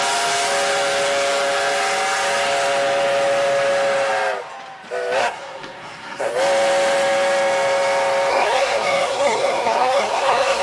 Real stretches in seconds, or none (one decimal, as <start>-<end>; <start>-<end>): 0.0-5.2; 6.3-8.3